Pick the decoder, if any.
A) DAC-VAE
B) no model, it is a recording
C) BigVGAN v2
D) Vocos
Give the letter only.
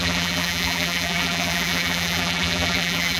C